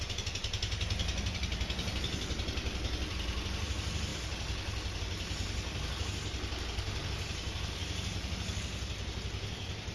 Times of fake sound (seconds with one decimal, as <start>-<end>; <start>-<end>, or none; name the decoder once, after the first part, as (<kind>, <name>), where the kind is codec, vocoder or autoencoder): none

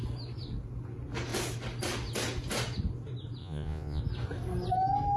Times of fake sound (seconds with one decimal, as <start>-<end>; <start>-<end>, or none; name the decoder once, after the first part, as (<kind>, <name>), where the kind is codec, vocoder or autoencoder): 3.4-4.0 (vocoder, Vocos)

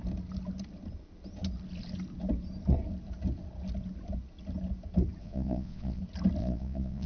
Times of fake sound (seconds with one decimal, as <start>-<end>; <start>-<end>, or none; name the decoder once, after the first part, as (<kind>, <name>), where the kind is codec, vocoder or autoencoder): 5.2-6.0 (vocoder, Vocos); 6.4-7.1

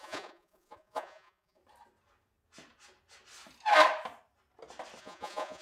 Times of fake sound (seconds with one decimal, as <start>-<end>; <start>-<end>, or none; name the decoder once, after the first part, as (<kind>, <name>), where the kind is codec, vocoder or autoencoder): 0.0-1.6 (vocoder, Vocos); 5.0-5.6

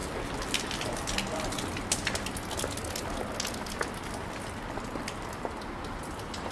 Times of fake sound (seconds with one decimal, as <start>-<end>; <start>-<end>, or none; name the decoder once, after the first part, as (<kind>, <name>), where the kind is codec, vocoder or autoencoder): none

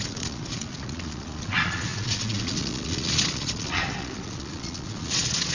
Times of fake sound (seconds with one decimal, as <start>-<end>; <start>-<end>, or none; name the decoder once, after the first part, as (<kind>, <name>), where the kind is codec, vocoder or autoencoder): 0.0-5.5 (vocoder, Vocos)

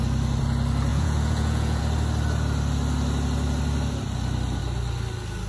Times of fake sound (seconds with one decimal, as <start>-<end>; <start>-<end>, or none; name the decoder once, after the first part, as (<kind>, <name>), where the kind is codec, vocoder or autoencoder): 0.9-1.8 (vocoder, Vocos)

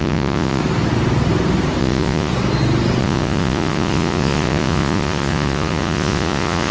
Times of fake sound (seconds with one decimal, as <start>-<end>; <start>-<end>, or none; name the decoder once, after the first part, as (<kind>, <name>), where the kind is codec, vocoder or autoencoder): 0.0-0.6 (vocoder, Vocos); 1.8-2.3; 3.0-6.7